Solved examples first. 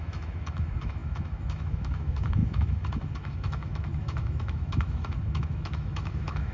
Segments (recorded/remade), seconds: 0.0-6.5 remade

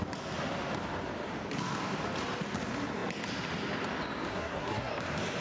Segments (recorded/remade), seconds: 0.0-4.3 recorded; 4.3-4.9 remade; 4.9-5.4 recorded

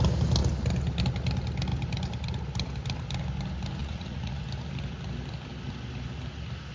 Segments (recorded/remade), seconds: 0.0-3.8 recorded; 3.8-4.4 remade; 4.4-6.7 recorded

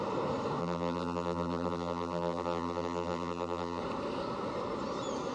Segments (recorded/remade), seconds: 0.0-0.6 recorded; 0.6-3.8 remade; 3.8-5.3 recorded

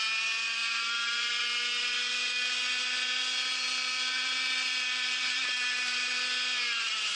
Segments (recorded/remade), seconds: 0.0-0.6 recorded; 0.6-1.4 remade; 1.4-1.8 recorded; 1.8-6.1 remade; 6.1-7.2 recorded

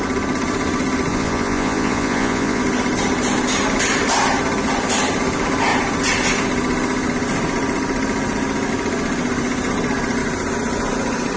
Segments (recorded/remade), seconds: 0.0-1.1 recorded; 1.1-2.6 remade; 2.6-11.4 recorded